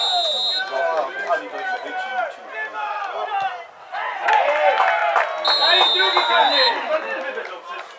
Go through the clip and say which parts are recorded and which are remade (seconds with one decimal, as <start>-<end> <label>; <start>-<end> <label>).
0.0-3.8 recorded; 3.8-4.3 remade; 4.3-8.0 recorded